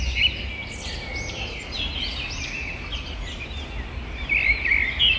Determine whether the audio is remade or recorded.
recorded